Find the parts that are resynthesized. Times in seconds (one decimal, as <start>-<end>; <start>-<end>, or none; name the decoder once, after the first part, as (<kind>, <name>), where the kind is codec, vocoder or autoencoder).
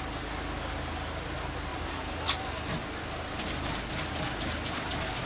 1.7-2.5 (vocoder, BigVGAN v2)